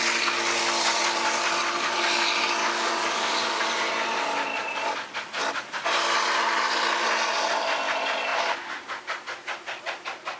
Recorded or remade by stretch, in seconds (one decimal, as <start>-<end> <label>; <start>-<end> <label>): 0.0-2.6 recorded; 2.6-3.6 remade; 3.6-10.4 recorded